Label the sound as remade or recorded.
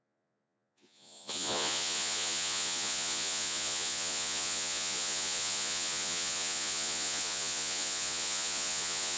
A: remade